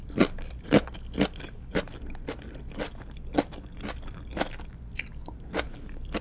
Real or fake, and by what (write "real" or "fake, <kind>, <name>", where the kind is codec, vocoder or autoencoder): real